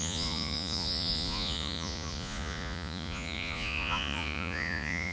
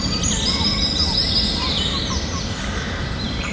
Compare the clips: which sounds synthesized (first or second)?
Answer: first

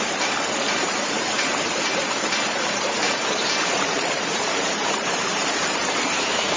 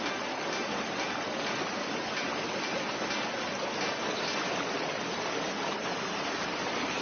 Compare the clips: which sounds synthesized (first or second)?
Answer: first